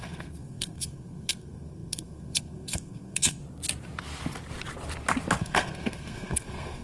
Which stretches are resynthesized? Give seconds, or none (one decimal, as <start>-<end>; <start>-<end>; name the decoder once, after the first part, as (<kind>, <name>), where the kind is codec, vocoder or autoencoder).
0.0-3.4 (codec, SNAC); 5.4-6.8